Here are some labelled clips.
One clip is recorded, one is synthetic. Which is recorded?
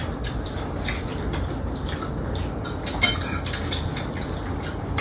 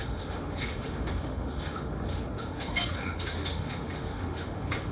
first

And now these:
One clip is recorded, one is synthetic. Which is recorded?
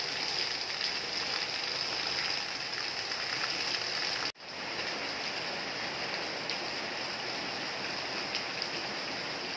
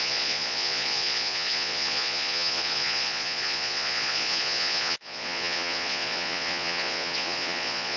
first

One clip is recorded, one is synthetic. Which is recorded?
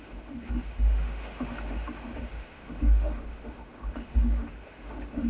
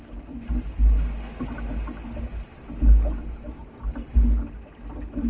second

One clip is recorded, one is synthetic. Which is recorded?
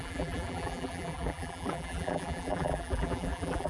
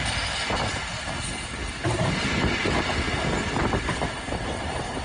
second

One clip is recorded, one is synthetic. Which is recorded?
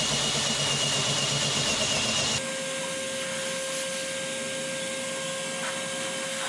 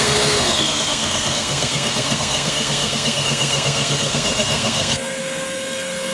first